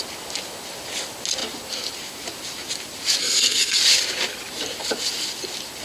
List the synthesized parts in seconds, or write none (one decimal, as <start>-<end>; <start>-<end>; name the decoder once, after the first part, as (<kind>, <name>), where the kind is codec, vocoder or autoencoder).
3.2-3.8 (codec, SNAC)